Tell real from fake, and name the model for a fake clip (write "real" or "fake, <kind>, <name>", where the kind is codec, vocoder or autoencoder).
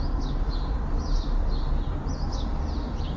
real